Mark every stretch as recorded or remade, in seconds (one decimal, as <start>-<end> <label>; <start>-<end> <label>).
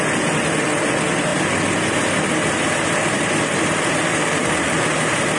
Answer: 0.0-5.4 recorded